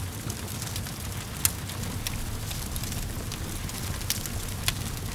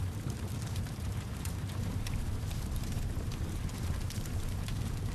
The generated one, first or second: second